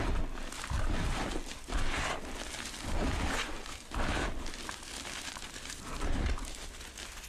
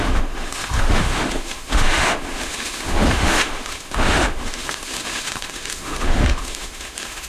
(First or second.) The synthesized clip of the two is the second